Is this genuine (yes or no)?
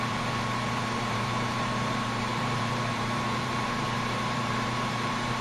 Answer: no